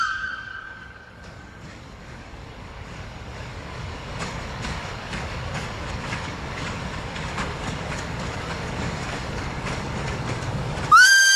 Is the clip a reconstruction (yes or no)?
yes